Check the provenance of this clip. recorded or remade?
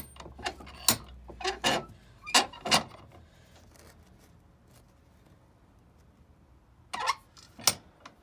recorded